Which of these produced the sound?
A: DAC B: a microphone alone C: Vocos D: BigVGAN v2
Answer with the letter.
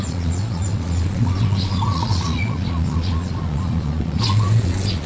C